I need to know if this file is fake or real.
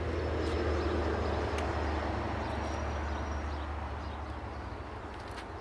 real